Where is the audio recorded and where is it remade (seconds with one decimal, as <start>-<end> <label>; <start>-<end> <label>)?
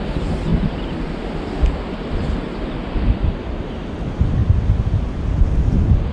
0.0-6.1 recorded